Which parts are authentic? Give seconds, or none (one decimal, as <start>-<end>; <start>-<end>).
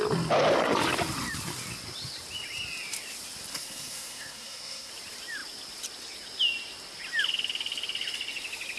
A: 0.0-3.5; 4.9-8.8